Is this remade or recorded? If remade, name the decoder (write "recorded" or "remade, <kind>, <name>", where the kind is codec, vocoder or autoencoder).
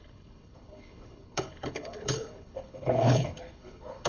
remade, codec, HILCodec